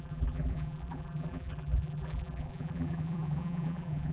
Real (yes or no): no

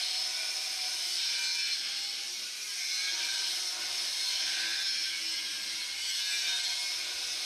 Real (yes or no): no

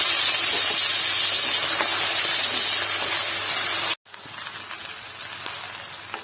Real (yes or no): yes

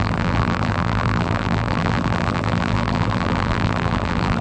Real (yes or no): no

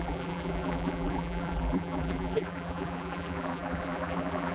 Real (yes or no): no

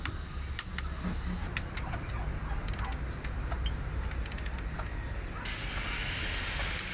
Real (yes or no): yes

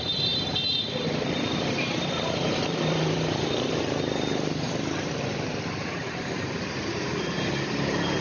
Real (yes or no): no